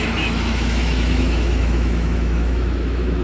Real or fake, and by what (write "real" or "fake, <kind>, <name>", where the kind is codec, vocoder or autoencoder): fake, autoencoder, DAC-VAE